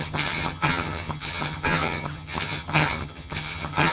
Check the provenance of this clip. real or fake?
fake